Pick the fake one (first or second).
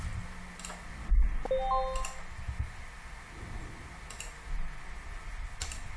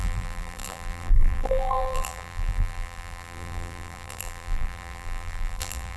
second